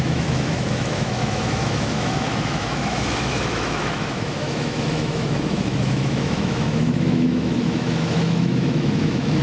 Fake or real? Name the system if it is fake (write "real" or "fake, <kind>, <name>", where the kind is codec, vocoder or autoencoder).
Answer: fake, autoencoder, DAC-VAE